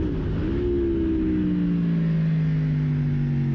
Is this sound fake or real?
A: real